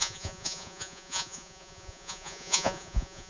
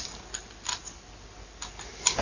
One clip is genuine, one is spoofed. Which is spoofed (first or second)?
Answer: first